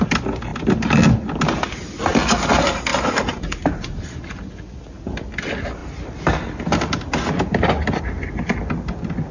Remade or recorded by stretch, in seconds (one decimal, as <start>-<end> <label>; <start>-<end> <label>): 0.0-9.3 recorded